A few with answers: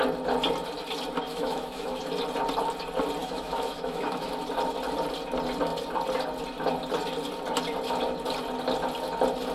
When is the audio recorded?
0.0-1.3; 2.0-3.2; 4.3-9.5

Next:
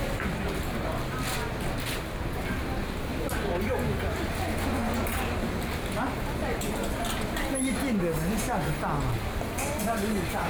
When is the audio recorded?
0.0-10.5

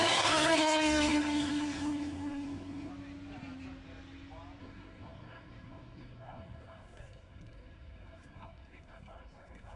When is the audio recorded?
2.9-4.6

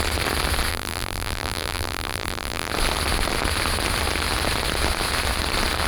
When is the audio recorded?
0.0-0.7; 2.7-5.9

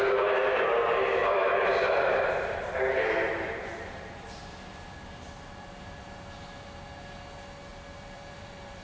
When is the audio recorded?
0.0-1.2; 4.5-7.7